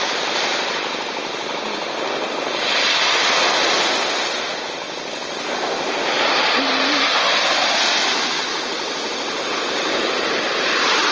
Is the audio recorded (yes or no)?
yes